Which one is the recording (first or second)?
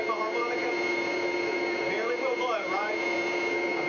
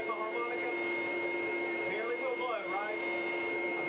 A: second